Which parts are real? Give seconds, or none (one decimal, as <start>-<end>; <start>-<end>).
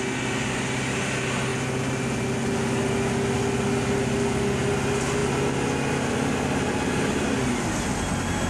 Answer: 0.0-8.5